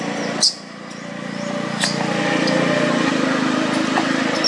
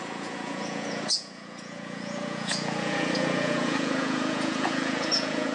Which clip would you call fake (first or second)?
second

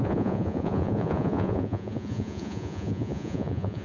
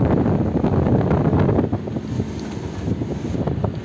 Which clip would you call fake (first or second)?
first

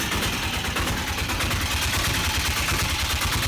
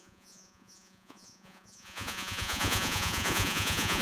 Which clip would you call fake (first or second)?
second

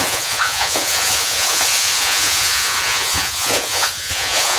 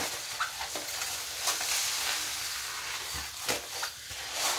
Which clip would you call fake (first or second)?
first